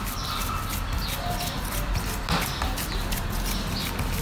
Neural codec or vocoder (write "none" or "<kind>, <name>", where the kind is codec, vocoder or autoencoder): none